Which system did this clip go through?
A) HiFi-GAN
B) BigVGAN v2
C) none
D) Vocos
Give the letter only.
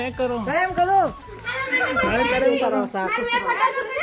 C